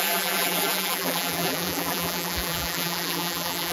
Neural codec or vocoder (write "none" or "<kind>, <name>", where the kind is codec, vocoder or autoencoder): vocoder, BigVGAN v2